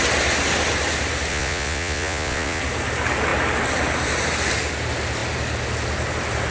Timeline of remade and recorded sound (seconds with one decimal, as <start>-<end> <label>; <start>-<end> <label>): 0.0-1.3 recorded; 1.3-2.6 remade; 2.6-6.5 recorded